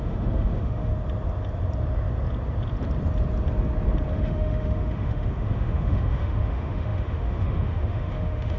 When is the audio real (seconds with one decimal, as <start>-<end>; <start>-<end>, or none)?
0.9-4.1